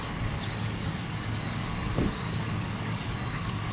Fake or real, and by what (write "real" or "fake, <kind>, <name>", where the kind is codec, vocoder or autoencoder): fake, codec, DAC